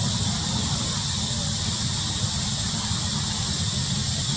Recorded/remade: recorded